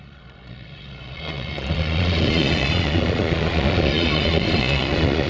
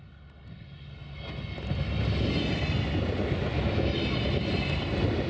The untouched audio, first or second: second